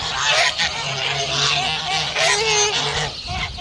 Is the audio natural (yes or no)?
yes